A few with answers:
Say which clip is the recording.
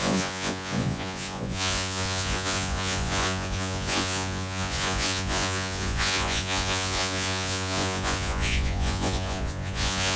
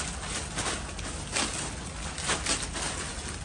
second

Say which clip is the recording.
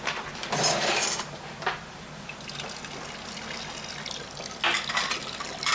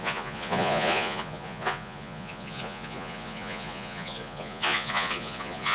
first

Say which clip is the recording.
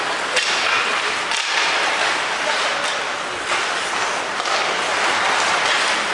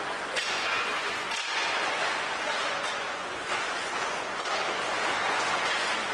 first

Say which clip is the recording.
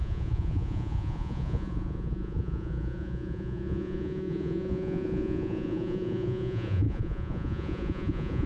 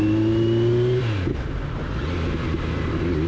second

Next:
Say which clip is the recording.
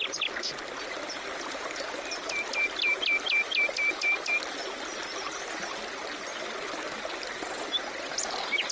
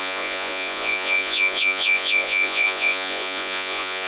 first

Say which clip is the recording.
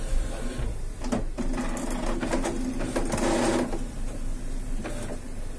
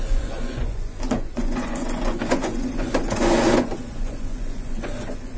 first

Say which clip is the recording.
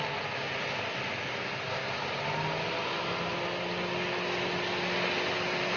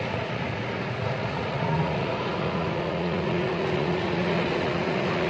first